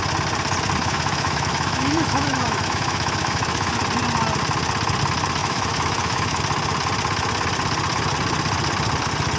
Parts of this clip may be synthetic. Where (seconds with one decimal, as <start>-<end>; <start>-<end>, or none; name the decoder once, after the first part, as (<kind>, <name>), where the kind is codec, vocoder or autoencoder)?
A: 0.8-3.8 (autoencoder, DAC-VAE); 5.4-6.4